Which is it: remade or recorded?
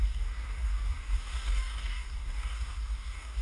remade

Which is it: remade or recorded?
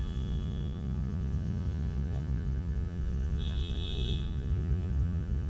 remade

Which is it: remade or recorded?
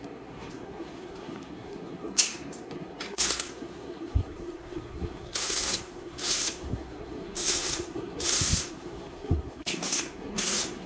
remade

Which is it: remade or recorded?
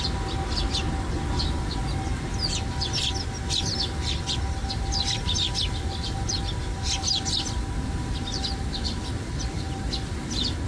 recorded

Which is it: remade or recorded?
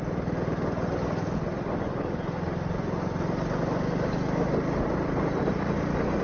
recorded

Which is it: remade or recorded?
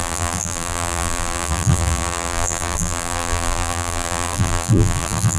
remade